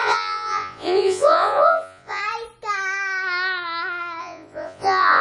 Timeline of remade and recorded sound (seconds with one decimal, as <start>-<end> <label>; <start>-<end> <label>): 0.0-2.2 remade; 2.2-4.2 recorded; 4.2-5.2 remade